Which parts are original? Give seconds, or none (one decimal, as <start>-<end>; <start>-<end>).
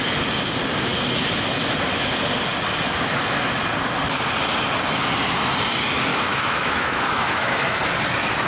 0.0-6.1; 7.8-8.5